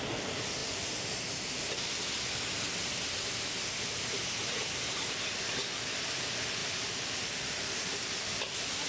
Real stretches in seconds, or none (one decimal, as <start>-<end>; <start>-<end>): 0.0-0.6; 2.0-4.4; 5.0-6.6; 8.0-8.9